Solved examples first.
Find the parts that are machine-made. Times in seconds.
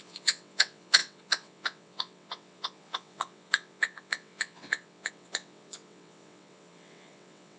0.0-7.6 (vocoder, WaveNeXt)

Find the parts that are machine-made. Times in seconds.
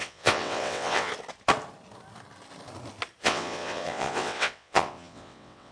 0.0-1.1 (vocoder, WaveNeXt); 3.2-5.7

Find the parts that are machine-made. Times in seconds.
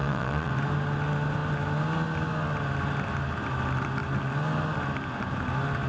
0.0-0.5 (vocoder, WaveNeXt)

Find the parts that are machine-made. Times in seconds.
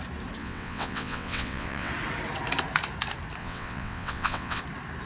0.4-1.9 (vocoder, WaveNeXt); 3.4-4.6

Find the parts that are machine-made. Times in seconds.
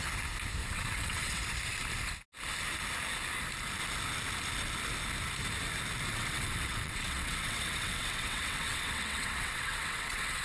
0.6-1.4 (vocoder, WaveNeXt); 6.1-10.4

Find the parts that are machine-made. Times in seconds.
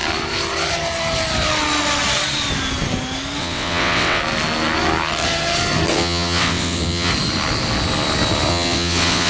3.4-4.2 (vocoder, WaveNeXt); 5.9-7.1; 8.5-9.3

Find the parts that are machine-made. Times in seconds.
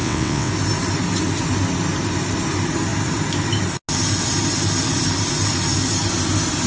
0.0-0.5 (vocoder, WaveNeXt)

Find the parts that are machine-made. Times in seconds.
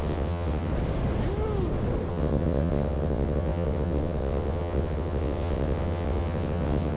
0.0-0.7 (vocoder, WaveNeXt); 2.1-7.0